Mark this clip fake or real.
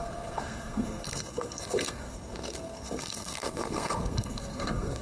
fake